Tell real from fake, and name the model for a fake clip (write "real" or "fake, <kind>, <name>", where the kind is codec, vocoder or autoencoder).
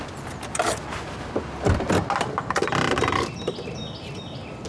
real